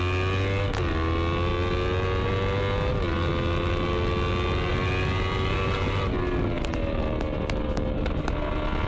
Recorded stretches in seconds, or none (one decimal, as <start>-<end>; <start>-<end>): 0.0-8.9